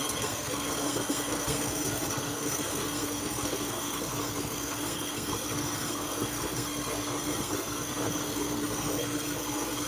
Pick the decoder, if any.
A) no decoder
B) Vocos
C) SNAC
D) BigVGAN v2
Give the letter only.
C